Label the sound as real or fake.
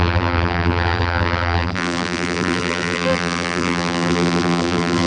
fake